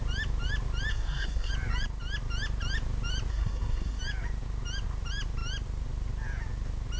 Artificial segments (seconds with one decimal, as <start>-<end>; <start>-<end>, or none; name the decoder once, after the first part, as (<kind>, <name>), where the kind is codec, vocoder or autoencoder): 0.9-1.5 (codec, SNAC); 3.3-4.0